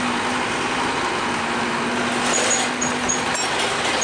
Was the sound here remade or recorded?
recorded